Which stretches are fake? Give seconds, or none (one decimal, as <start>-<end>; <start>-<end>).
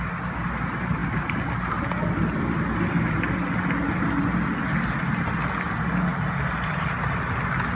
none